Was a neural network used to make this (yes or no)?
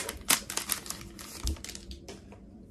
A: no